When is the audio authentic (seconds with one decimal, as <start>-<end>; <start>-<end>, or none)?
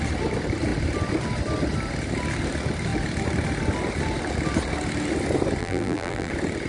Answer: 0.0-5.6; 6.3-6.7